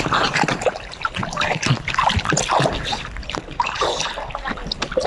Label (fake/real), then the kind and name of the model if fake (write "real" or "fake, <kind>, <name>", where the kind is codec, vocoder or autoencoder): real